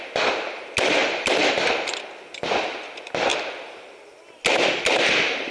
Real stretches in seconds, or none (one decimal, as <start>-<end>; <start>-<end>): 0.0-1.0; 2.0-5.5